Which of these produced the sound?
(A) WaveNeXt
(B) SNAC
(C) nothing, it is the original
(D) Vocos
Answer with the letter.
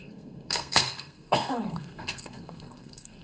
B